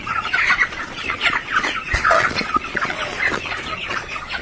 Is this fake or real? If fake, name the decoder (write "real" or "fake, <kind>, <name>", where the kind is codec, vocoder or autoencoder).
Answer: fake, vocoder, Vocos